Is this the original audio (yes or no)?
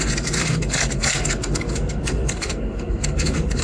no